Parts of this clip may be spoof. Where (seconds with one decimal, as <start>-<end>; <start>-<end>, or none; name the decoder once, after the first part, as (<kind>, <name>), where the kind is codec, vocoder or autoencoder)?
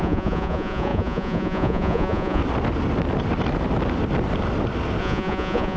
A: 0.0-2.4 (vocoder, Vocos); 5.0-5.8